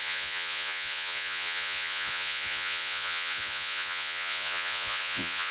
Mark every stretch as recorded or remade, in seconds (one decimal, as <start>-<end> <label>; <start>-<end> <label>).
0.0-5.5 remade